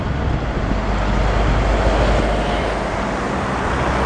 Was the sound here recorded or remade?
recorded